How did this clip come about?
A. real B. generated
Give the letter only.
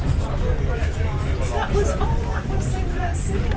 A